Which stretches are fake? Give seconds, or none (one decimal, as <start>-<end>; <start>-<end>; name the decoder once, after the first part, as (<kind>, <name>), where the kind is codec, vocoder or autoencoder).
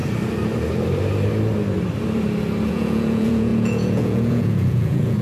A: 2.7-5.2 (vocoder, Vocos)